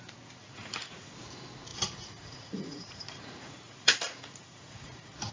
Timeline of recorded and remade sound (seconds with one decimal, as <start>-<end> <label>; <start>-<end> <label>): 0.0-0.4 recorded; 0.4-1.1 remade; 1.1-1.7 recorded; 1.7-5.3 remade